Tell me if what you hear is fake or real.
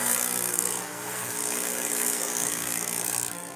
fake